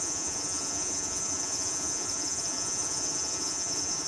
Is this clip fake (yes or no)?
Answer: yes